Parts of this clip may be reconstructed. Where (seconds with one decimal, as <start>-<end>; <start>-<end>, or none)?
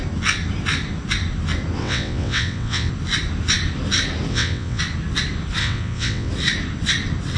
1.8-2.9; 4.3-4.8; 5.6-6.3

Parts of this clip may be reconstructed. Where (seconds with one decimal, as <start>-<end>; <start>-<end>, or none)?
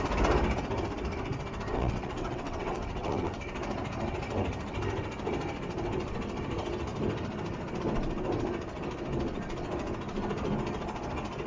1.7-3.4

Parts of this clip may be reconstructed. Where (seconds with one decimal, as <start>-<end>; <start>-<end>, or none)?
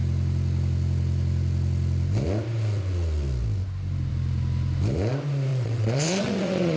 5.5-6.8